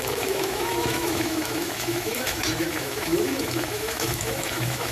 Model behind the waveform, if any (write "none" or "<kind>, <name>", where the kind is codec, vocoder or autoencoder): autoencoder, DAC-VAE